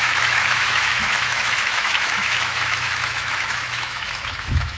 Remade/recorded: remade